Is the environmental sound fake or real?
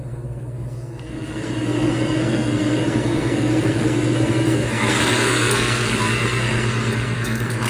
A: fake